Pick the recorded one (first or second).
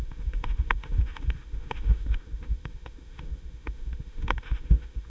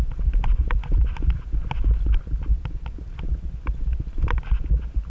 second